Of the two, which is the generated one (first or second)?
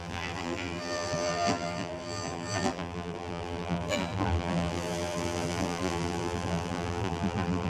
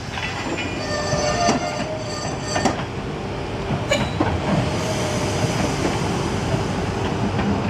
first